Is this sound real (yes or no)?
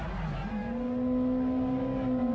yes